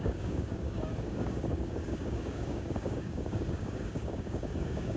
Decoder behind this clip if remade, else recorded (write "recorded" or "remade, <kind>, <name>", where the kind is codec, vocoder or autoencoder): remade, codec, DAC